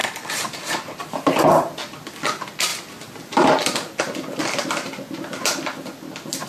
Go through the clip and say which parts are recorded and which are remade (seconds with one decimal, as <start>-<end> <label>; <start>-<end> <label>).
0.0-2.7 recorded; 2.7-3.5 remade; 3.5-6.5 recorded

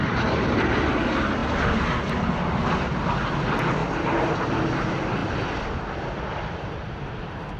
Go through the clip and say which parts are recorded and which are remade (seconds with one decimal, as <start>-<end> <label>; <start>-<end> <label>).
0.0-3.8 recorded; 3.8-4.5 remade; 4.5-7.6 recorded

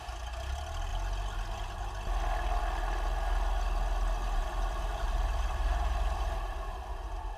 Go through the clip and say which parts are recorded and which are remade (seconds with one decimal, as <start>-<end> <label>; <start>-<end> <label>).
0.0-4.2 recorded; 4.2-6.7 remade; 6.7-7.4 recorded

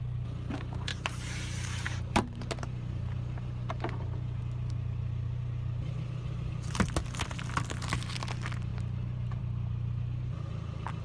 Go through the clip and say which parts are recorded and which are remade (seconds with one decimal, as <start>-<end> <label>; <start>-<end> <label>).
0.0-0.9 recorded; 0.9-4.4 remade; 4.4-8.7 recorded; 8.7-9.4 remade; 9.4-11.0 recorded

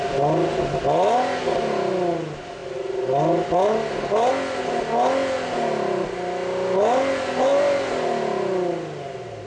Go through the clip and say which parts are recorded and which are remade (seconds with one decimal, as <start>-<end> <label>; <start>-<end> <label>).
0.0-9.5 recorded

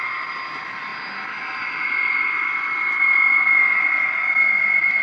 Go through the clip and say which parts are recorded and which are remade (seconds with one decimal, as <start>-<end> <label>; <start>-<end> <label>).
0.0-5.0 remade

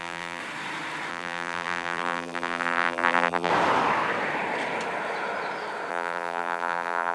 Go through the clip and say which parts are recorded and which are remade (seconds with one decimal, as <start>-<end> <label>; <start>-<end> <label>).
0.0-0.4 remade; 0.4-1.1 recorded; 1.1-3.5 remade; 3.5-5.9 recorded; 5.9-7.1 remade

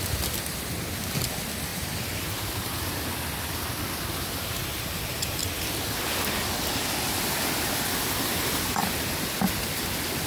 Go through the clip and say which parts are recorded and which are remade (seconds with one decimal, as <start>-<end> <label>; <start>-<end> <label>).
0.0-1.7 recorded; 1.7-3.2 remade; 3.2-4.7 recorded; 4.7-5.4 remade; 5.4-10.3 recorded